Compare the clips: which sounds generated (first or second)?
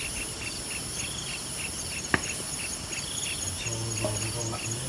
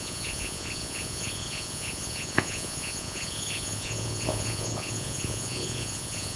second